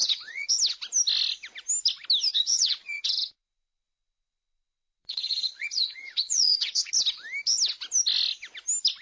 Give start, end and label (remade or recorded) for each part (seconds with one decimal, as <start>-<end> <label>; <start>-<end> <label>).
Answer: 0.0-0.5 remade; 0.5-2.3 recorded; 2.3-6.9 remade; 6.9-9.0 recorded

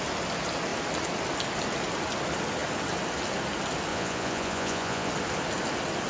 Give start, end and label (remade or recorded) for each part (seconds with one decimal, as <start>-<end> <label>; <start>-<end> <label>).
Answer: 0.0-3.9 recorded; 3.9-5.1 remade; 5.1-6.1 recorded

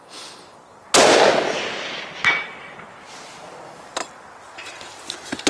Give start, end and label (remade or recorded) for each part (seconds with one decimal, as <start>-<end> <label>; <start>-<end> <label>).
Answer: 0.0-5.5 recorded

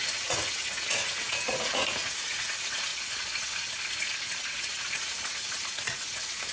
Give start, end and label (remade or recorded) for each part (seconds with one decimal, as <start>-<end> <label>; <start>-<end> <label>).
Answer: 0.0-6.5 remade

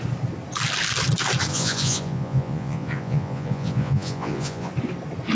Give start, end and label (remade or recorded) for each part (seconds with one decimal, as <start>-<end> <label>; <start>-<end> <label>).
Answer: 0.0-1.5 recorded; 1.5-4.7 remade; 4.7-5.3 recorded

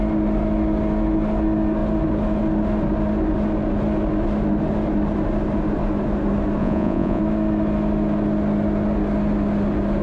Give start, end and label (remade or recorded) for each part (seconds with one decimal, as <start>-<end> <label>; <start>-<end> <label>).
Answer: 0.0-6.6 recorded; 6.6-7.2 remade; 7.2-10.0 recorded